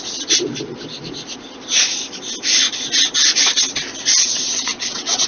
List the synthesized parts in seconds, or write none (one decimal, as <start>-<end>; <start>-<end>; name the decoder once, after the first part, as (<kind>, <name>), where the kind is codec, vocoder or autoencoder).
4.3-5.3 (vocoder, WaveNeXt)